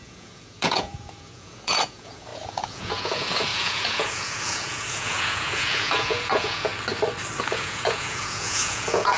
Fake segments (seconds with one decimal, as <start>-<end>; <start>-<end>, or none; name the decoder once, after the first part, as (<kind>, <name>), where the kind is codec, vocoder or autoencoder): 0.0-6.7 (vocoder, Vocos); 7.4-9.2